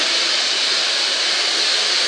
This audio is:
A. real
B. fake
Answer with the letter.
A